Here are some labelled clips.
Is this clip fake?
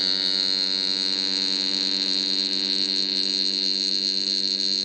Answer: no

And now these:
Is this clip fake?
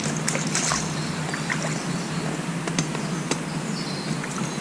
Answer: no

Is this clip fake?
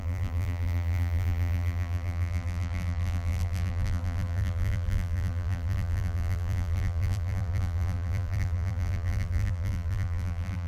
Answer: yes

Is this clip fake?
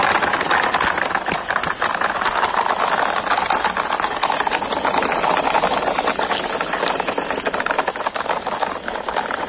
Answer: no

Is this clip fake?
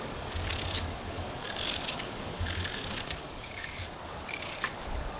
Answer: yes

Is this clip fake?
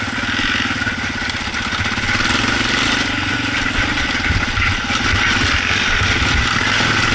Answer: no